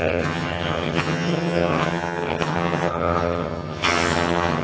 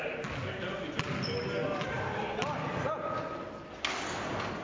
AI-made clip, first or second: first